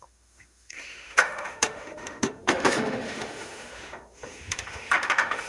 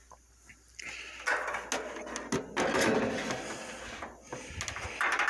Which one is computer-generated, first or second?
first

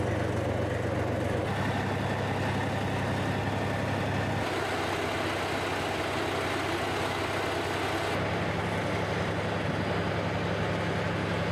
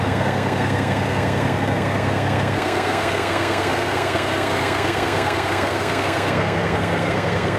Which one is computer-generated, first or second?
second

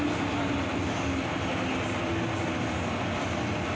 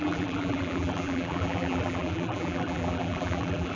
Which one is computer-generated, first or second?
second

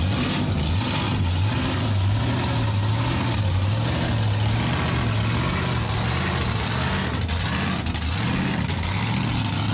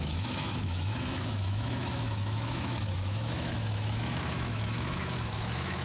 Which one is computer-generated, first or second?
second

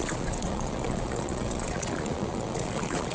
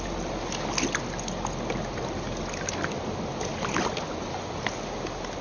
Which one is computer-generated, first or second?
first